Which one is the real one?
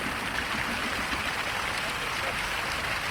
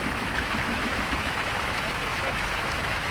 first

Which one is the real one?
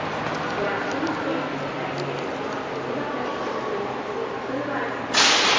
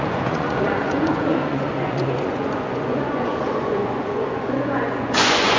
first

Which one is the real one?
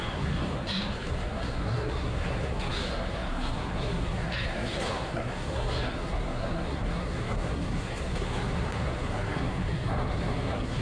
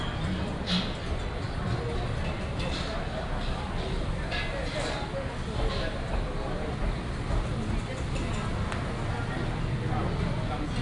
second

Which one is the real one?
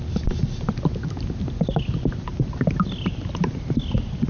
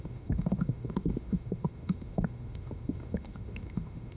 first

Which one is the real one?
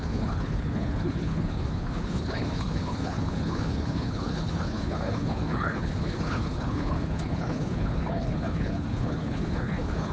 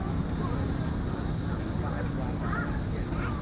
second